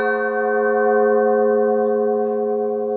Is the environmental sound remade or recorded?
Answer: recorded